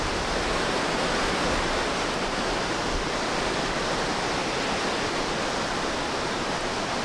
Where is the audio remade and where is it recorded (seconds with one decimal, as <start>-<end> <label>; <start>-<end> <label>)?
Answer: 0.0-7.0 recorded